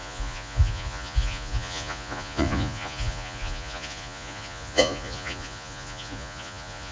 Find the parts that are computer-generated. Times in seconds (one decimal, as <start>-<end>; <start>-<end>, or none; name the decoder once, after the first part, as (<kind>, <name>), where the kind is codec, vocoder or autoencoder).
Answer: 0.0-6.9 (vocoder, Vocos)